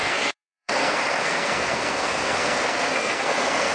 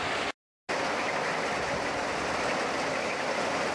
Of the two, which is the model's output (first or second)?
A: first